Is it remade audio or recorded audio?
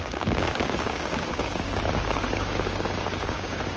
remade